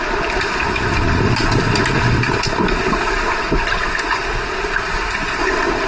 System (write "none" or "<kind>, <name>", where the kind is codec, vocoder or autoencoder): none